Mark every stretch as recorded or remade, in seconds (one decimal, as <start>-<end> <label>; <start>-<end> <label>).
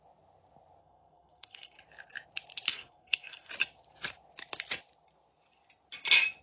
0.0-0.8 recorded; 0.8-1.8 remade; 1.8-2.7 recorded; 2.7-3.5 remade; 3.5-6.4 recorded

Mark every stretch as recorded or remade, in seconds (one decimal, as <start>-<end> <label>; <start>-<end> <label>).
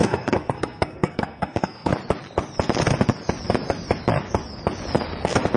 0.0-1.9 remade; 1.9-5.6 recorded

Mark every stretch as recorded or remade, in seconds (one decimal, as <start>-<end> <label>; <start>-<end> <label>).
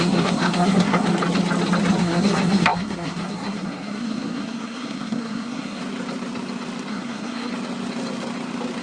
0.0-1.1 remade; 1.1-2.0 recorded; 2.0-5.8 remade; 5.8-6.9 recorded; 6.9-7.5 remade; 7.5-8.8 recorded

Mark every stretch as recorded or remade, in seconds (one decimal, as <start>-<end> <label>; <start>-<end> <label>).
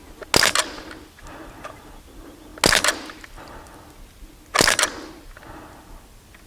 0.0-6.5 recorded